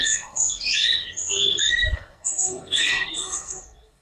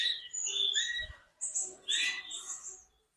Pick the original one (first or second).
second